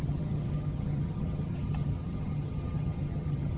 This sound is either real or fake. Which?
fake